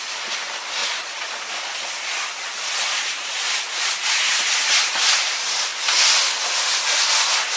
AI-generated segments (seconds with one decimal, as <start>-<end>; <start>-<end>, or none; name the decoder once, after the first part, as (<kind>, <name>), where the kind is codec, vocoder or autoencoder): 0.8-5.1 (vocoder, Vocos)